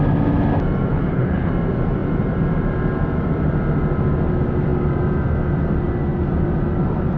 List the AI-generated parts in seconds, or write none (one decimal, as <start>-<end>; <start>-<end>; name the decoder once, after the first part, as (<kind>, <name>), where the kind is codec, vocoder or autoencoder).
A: 0.9-1.5 (codec, HILCodec)